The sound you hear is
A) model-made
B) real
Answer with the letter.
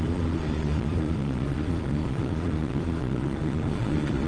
A